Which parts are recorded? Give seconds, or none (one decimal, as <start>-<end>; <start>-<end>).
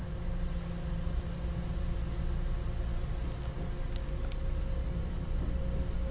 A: 0.0-6.1